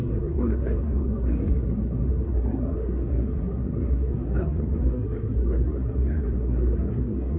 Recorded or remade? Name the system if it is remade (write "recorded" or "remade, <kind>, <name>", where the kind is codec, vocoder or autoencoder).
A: remade, codec, SNAC